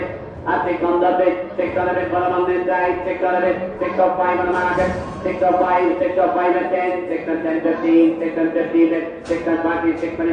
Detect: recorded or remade recorded